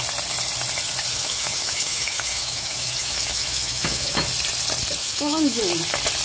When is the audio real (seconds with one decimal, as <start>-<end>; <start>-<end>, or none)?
0.0-1.1; 4.3-5.0; 5.6-6.2